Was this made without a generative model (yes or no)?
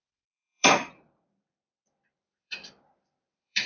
no